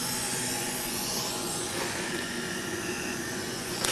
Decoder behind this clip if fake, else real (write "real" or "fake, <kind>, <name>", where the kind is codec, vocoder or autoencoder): fake, vocoder, Vocos